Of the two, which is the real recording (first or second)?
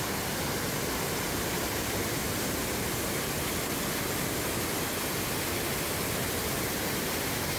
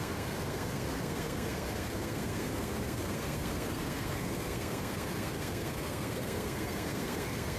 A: first